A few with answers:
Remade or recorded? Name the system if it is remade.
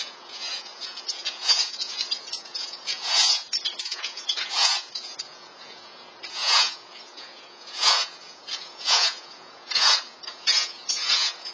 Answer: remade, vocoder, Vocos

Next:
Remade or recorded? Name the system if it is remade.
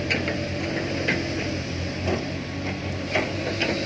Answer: recorded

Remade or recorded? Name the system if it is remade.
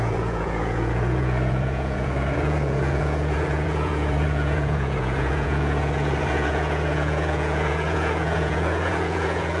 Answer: remade, vocoder, Vocos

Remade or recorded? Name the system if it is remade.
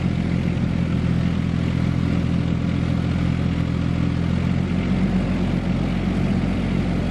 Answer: recorded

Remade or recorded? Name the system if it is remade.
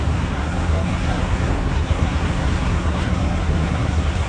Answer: remade, codec, SNAC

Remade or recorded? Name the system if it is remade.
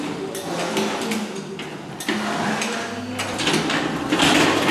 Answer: recorded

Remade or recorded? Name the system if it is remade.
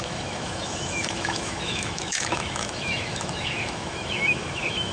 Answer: remade, autoencoder, DAC-VAE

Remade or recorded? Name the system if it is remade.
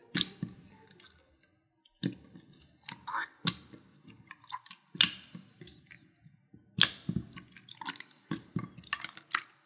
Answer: recorded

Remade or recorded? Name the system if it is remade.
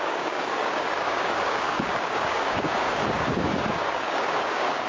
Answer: remade, codec, DAC